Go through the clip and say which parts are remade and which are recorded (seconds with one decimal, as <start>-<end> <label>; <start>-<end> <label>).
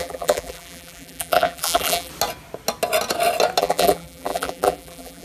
0.0-2.1 remade; 2.1-3.6 recorded; 3.6-5.2 remade